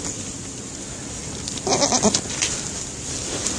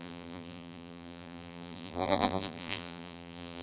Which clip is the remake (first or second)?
second